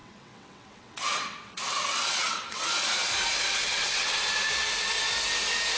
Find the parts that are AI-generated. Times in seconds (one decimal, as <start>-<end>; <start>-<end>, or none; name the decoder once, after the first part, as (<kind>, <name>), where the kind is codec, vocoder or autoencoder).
0.0-2.7 (vocoder, WaveNeXt); 3.6-4.2